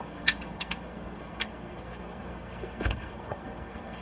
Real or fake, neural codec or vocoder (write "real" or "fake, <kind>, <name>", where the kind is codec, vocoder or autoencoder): fake, codec, SNAC